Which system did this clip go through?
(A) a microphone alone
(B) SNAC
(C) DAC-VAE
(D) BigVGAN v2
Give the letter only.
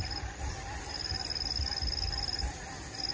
A